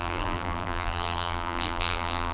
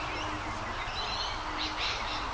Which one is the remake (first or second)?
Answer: first